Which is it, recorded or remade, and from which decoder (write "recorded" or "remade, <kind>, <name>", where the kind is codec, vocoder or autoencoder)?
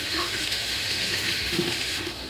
remade, autoencoder, DAC-VAE